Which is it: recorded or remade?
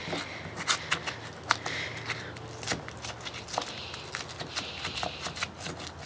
recorded